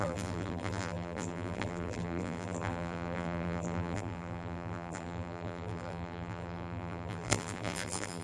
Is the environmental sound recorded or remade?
remade